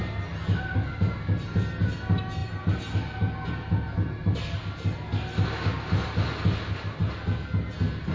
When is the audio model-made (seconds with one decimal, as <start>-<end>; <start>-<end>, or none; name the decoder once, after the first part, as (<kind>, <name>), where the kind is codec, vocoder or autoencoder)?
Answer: none